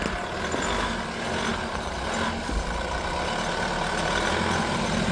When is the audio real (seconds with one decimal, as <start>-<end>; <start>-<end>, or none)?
0.0-5.1